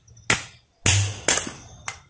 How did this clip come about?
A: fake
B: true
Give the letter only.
B